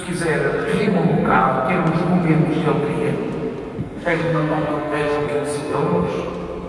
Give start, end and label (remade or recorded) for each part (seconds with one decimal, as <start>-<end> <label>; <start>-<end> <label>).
0.0-0.6 recorded; 0.6-1.5 remade; 1.5-3.8 recorded; 3.8-6.3 remade; 6.3-6.7 recorded